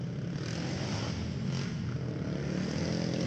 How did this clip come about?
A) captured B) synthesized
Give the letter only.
A